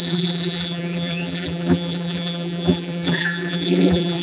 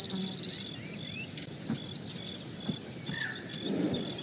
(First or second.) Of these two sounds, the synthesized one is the first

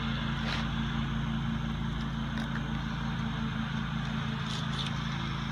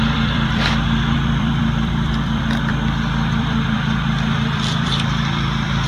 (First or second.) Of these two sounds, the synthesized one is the second